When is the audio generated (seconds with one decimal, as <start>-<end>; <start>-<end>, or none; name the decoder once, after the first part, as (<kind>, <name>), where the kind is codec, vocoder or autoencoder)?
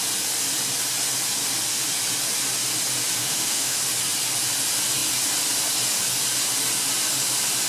3.2-3.8 (autoencoder, DAC-VAE)